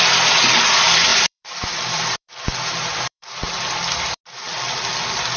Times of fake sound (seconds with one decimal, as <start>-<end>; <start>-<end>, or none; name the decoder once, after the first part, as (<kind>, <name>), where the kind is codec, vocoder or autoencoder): 1.1-4.2 (vocoder, BigVGAN v2)

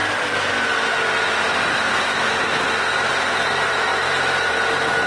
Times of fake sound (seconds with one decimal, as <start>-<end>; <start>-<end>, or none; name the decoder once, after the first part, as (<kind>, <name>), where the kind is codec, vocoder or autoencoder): 3.1-3.9 (vocoder, BigVGAN v2)

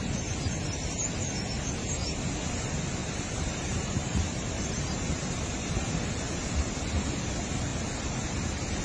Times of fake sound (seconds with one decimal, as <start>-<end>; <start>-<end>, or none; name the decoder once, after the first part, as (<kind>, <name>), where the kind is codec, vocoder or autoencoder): 3.0-5.9 (vocoder, BigVGAN v2)